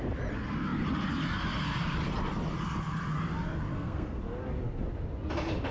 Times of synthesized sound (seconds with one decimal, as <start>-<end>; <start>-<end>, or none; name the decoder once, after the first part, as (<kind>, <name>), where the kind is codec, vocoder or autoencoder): 3.7-4.2 (codec, SNAC)